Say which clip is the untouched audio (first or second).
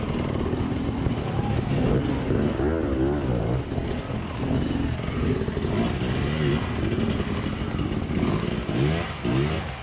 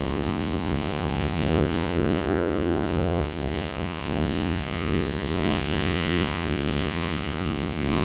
first